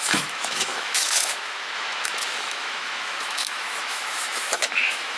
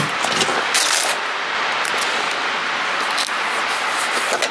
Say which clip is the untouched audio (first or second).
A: second